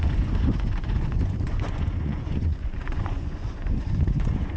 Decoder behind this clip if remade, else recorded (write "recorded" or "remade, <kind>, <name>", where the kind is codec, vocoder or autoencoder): remade, vocoder, Vocos